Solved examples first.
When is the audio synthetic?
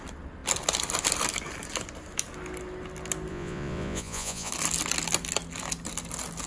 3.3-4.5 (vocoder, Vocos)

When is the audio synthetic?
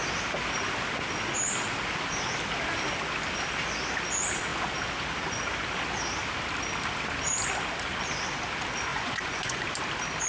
8.9-9.6 (vocoder, Vocos)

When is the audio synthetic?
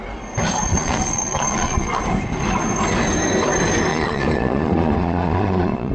0.7-2.0 (vocoder, Vocos); 3.9-5.9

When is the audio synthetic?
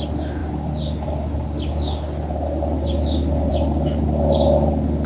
none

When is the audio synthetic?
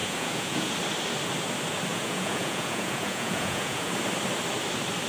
0.0-0.7 (vocoder, Vocos); 1.9-3.9